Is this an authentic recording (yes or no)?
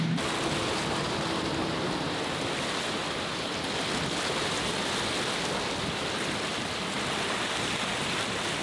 yes